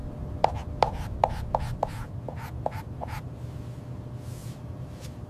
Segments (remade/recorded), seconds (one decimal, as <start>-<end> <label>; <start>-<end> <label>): 0.0-4.4 recorded; 4.4-5.3 remade